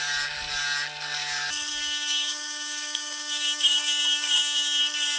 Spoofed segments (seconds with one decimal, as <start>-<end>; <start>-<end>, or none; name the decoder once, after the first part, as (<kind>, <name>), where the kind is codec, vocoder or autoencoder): 1.7-4.8 (codec, DAC)